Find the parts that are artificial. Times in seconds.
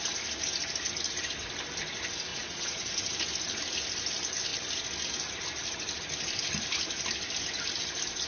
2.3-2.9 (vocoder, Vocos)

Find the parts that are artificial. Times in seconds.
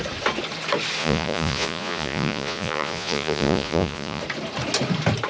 1.0-4.2 (vocoder, Vocos)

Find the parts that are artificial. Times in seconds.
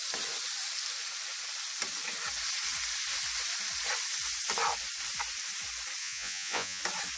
6.0-6.8 (vocoder, Vocos)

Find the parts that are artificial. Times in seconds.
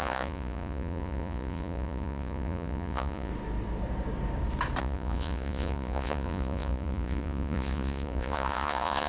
0.0-3.3 (vocoder, Vocos); 4.8-9.1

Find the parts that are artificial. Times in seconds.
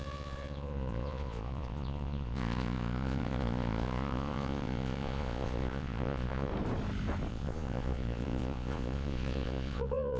0.0-6.5 (vocoder, Vocos); 7.3-10.2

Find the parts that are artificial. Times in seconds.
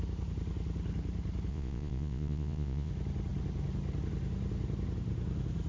1.5-2.9 (vocoder, Vocos)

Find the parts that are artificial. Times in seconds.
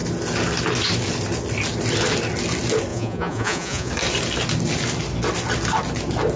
2.9-3.9 (vocoder, Vocos)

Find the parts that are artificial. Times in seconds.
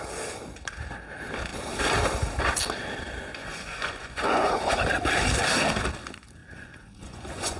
3.4-4.6 (vocoder, Vocos); 6.4-7.6